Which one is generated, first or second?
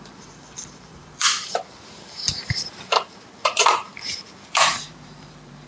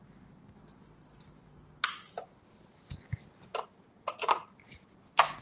first